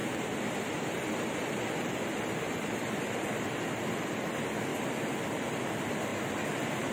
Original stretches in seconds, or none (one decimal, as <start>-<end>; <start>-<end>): 3.5-4.7; 5.3-6.1